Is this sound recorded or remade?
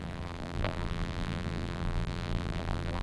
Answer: remade